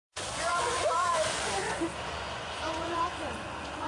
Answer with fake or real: fake